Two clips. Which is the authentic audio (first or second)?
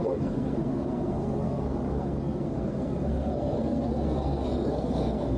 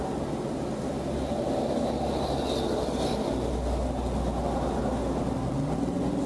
second